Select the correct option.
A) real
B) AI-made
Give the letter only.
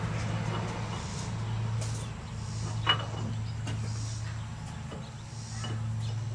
A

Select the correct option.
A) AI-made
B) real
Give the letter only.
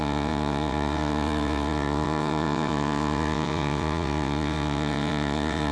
A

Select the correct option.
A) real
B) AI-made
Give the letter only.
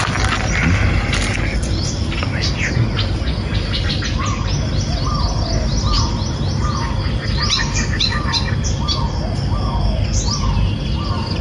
A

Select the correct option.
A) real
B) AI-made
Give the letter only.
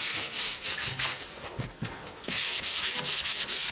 B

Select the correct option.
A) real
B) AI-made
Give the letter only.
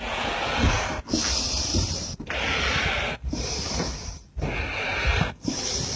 A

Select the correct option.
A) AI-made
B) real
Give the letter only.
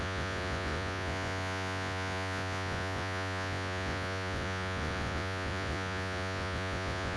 A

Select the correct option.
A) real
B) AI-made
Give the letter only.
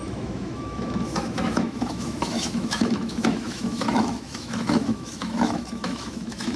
B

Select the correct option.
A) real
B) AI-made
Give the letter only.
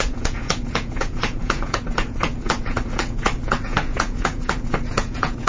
B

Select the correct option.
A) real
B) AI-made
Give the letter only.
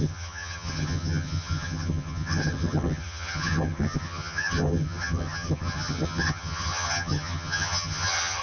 B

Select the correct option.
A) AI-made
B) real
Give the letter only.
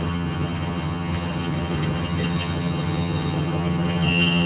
A